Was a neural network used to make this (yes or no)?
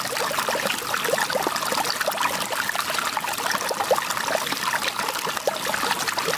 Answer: no